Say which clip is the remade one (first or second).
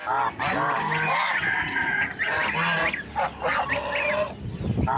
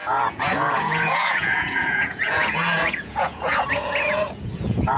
second